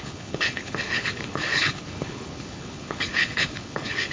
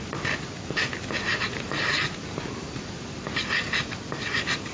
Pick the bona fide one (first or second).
second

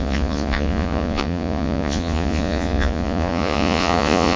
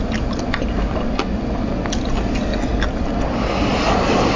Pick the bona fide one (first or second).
second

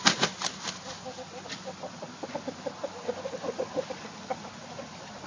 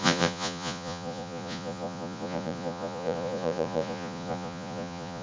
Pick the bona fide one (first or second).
first